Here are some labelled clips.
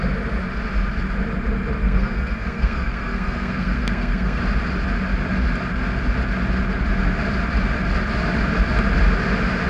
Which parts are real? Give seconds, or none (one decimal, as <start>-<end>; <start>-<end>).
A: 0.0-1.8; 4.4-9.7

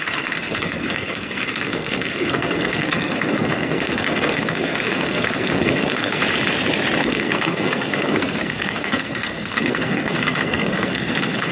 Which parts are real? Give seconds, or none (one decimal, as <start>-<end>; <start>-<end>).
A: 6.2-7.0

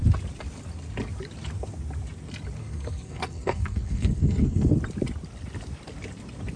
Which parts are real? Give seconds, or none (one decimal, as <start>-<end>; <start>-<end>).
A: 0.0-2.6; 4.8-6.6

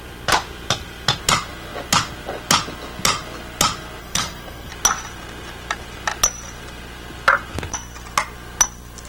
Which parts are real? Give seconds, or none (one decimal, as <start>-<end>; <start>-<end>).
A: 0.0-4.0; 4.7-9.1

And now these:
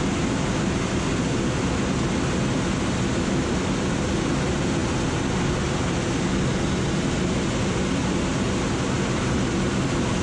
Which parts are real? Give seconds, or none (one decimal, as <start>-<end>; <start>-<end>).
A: 0.0-10.2

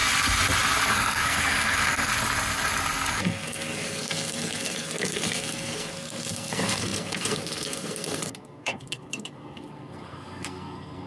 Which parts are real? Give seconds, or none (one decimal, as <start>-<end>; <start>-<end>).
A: 0.0-0.9; 2.1-3.1

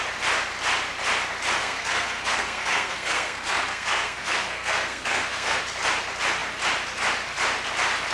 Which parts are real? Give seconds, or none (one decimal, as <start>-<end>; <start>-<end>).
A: 0.0-1.6; 5.6-8.1

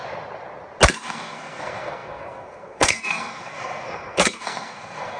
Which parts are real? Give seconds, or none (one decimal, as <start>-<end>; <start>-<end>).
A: 0.0-0.9